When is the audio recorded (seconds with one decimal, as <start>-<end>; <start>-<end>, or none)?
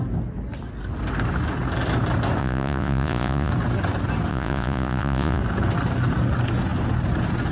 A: 0.0-2.4; 3.5-4.3; 5.4-7.5